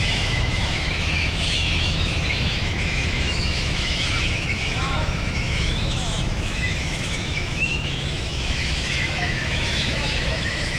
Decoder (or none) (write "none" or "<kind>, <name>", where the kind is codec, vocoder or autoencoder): autoencoder, DAC-VAE